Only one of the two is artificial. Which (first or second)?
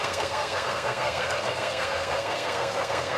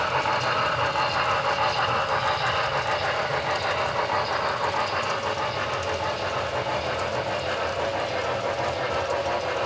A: first